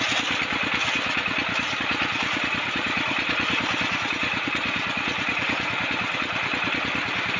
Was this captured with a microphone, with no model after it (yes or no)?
yes